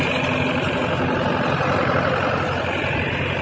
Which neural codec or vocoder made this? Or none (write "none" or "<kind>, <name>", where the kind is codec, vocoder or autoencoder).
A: none